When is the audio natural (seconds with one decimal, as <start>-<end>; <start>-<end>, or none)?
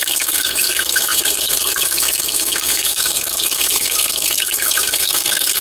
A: none